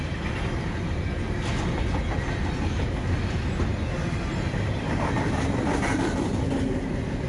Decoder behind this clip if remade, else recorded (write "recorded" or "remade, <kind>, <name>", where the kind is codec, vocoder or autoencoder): recorded